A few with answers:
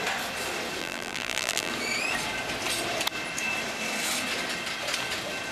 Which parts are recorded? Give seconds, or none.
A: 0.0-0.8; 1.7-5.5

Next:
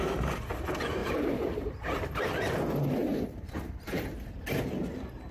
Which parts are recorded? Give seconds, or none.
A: 0.0-1.0; 2.3-3.0; 4.4-5.3

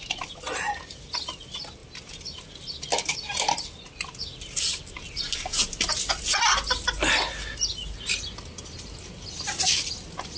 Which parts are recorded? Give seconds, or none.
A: 0.0-10.4

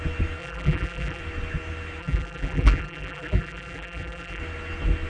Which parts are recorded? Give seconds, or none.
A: 0.0-0.4; 1.2-2.0; 4.4-5.1

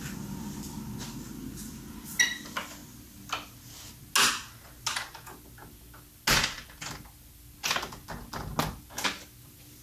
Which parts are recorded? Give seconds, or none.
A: 0.0-9.8

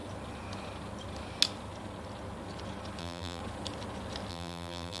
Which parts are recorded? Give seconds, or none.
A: 0.0-3.0; 3.4-4.3

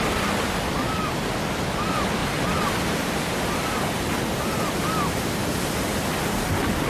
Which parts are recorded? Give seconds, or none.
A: 0.0-6.9

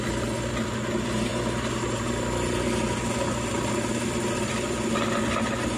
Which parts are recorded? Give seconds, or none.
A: 0.0-5.8